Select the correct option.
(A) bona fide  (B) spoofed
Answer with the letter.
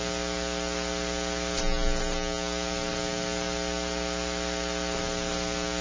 A